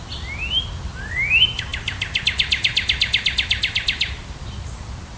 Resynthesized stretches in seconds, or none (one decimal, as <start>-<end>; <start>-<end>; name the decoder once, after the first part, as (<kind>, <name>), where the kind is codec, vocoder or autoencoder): none